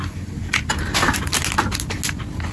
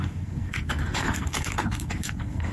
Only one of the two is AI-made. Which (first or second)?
second